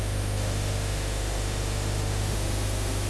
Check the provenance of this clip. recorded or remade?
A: remade